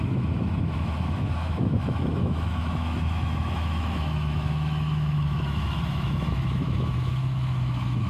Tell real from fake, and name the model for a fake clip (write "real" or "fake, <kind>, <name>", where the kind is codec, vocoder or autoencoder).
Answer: fake, autoencoder, DAC-VAE